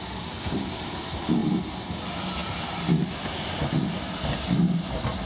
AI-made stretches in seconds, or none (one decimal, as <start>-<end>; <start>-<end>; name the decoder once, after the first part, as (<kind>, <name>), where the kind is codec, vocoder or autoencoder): none

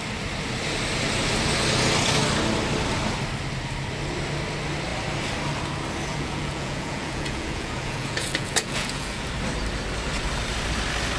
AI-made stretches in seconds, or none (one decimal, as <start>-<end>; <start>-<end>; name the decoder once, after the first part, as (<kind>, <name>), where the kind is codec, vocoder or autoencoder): 6.1-9.3 (vocoder, Vocos)

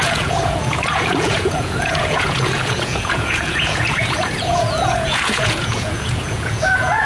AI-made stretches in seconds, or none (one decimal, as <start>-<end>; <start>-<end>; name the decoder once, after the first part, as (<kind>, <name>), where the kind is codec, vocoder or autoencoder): 0.0-7.0 (vocoder, Vocos)